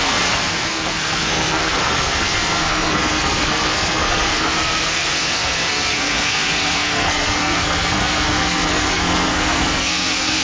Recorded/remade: remade